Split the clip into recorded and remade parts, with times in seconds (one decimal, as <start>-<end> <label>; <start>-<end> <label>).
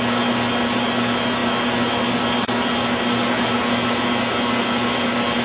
0.0-5.4 recorded